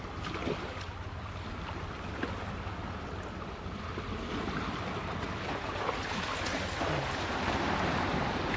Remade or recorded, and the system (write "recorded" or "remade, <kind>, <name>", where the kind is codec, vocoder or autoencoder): recorded